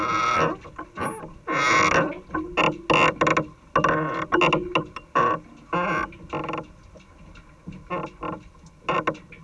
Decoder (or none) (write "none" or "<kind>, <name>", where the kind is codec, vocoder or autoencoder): none